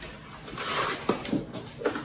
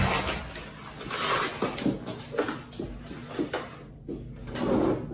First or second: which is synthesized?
first